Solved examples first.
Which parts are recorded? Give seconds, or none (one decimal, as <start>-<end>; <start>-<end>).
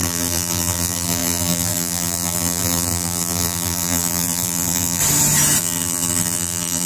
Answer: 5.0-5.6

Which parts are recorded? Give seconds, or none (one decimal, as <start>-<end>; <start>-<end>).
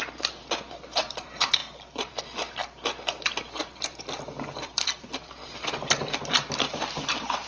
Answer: 2.6-3.6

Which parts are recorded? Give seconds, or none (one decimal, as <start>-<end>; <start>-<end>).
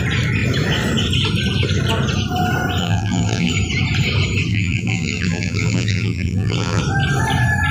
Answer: 0.0-2.8; 3.5-4.5; 6.8-7.7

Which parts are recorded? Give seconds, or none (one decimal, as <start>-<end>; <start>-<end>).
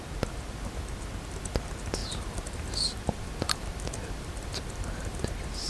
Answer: 0.0-2.0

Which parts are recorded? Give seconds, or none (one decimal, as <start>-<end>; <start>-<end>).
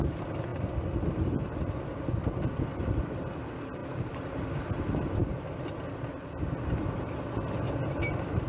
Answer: 0.5-1.6; 3.8-4.8; 5.2-5.8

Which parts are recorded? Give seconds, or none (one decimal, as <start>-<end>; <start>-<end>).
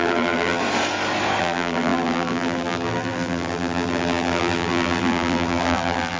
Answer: 0.6-1.4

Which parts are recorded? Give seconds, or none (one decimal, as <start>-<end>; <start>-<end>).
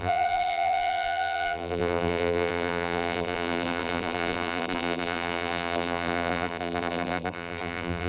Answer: none